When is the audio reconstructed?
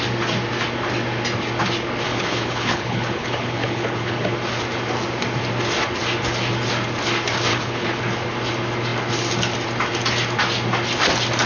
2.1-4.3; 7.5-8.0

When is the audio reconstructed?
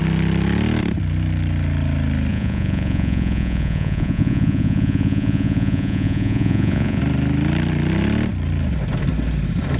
2.3-7.0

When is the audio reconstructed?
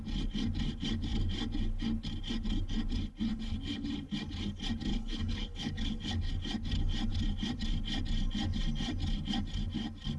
3.3-3.9; 4.9-6.3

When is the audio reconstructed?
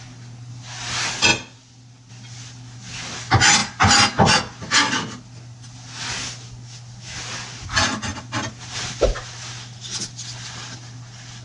none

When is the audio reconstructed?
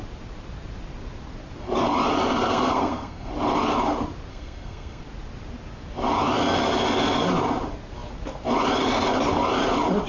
2.5-3.3; 4.3-5.0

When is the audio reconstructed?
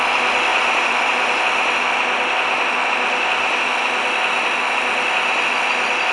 0.5-1.4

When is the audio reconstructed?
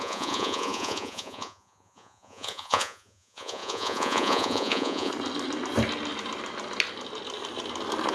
0.0-5.1